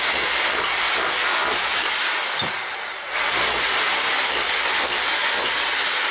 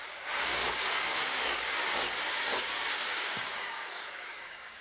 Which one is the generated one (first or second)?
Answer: second